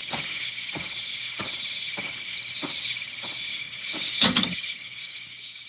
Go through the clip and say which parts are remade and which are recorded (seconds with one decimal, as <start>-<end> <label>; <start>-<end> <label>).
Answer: 0.0-3.5 recorded; 3.5-5.7 remade